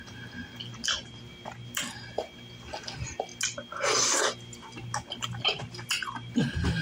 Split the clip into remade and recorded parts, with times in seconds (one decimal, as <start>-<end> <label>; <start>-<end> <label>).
0.0-6.8 recorded